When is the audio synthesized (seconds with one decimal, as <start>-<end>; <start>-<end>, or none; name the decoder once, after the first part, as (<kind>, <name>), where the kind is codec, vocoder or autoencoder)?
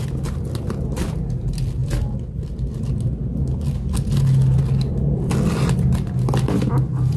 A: none